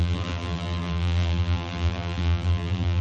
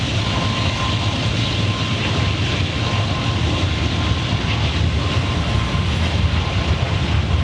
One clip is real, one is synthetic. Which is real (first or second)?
second